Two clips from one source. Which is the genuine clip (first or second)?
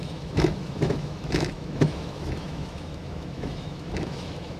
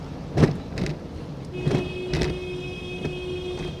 second